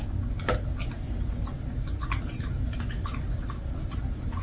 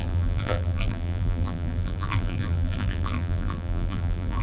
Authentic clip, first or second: first